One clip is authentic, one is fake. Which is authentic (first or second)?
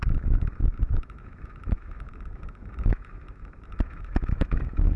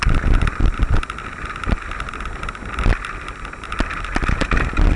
second